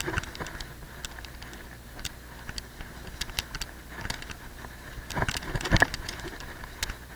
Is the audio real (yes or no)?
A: yes